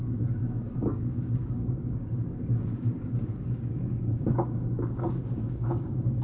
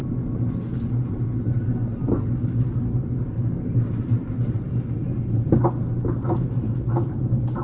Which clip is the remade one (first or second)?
first